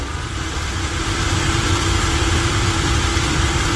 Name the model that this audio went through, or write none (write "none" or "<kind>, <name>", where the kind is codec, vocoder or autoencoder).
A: vocoder, BigVGAN v2